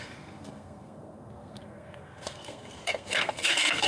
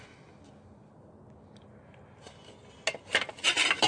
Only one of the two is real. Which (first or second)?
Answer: second